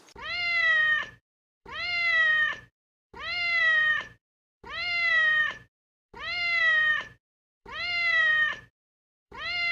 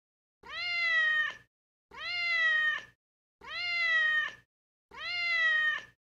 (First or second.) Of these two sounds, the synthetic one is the first